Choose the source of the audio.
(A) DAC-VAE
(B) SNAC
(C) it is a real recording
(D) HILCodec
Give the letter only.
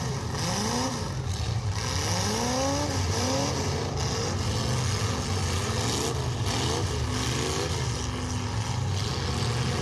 C